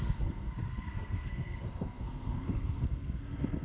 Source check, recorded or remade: remade